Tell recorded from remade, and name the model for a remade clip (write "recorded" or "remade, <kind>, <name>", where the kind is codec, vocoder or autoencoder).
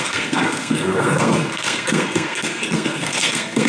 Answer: remade, codec, SNAC